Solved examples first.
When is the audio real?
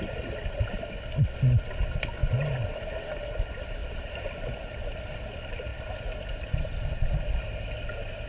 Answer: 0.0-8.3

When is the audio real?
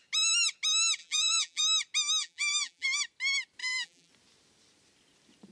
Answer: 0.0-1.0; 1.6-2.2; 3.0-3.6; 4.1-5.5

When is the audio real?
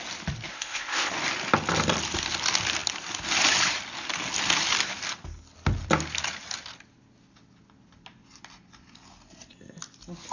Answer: 0.0-0.5; 1.1-10.3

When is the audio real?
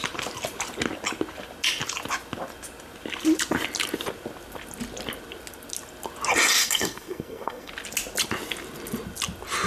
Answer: 0.0-6.6; 7.7-9.7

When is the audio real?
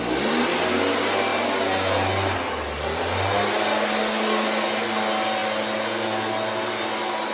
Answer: 0.0-7.3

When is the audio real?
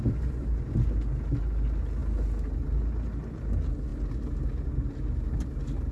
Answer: 0.0-5.9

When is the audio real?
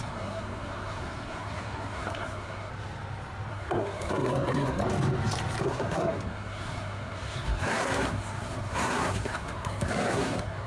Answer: 2.7-3.5; 4.8-5.6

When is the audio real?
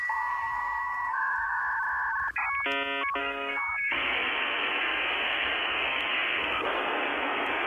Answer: 1.6-3.2